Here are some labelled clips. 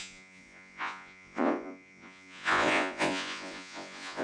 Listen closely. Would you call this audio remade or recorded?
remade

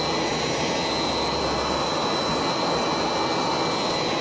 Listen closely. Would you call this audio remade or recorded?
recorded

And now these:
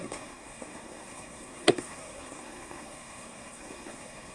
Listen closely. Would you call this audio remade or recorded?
remade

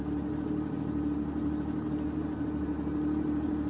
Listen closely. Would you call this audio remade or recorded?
recorded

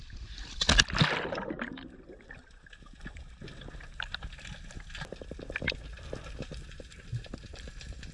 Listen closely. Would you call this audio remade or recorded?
recorded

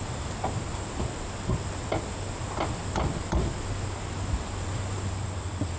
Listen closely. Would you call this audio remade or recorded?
recorded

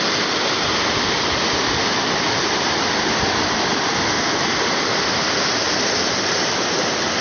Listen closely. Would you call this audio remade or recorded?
recorded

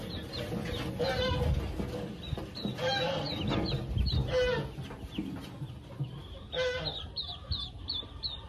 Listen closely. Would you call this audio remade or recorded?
recorded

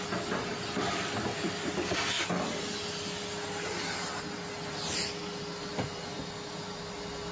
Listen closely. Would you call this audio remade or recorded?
recorded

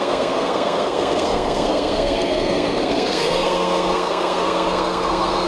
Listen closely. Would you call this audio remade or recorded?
remade